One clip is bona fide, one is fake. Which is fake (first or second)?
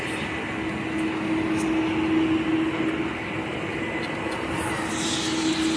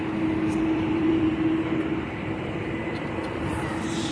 second